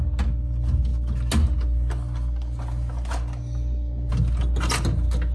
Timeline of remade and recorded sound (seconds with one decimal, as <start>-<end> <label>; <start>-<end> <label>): 0.0-5.3 recorded